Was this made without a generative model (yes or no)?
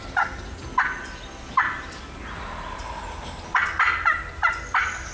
yes